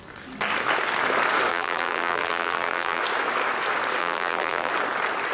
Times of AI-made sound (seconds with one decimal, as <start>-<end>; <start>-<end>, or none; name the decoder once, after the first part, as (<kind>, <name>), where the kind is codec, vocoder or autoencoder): 1.5-3.0 (vocoder, BigVGAN v2); 4.0-4.7